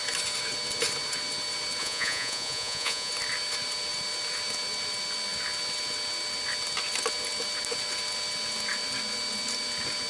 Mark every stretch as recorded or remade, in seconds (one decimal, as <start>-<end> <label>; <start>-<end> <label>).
0.0-1.8 recorded; 1.8-3.1 remade; 3.1-10.1 recorded